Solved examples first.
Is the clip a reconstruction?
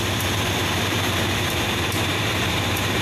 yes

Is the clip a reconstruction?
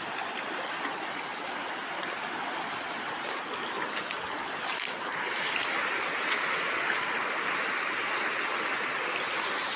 no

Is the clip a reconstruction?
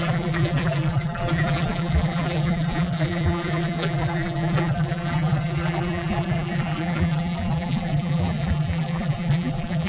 yes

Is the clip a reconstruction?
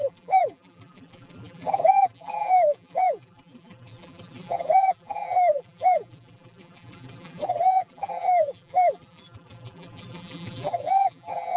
yes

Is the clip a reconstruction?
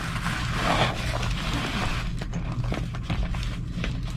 no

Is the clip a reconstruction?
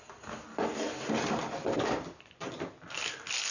no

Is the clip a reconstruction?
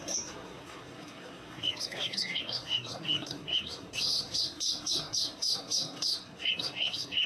yes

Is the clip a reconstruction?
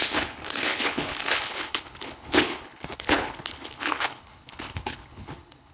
yes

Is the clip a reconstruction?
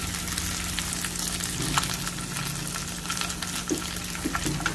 no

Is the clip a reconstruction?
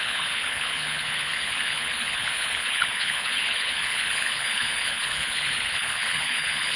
yes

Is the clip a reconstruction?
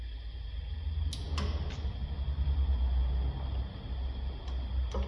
no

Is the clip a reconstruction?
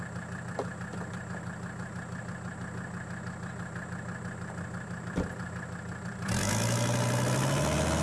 no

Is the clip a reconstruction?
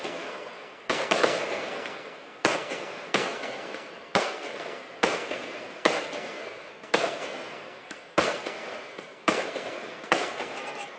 yes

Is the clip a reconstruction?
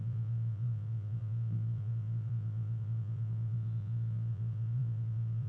yes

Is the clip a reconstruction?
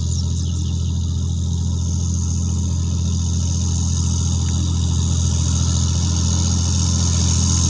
no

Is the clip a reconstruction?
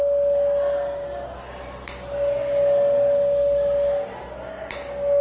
no